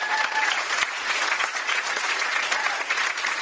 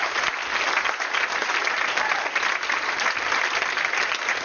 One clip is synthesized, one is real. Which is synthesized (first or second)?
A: first